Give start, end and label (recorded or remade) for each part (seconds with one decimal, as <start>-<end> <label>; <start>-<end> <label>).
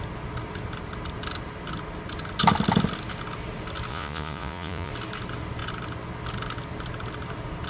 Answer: 0.0-3.9 recorded; 3.9-4.9 remade; 4.9-7.7 recorded